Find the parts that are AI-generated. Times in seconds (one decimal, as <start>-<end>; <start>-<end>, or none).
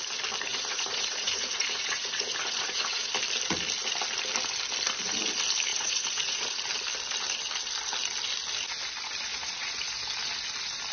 0.5-3.1; 5.7-6.5; 9.3-9.8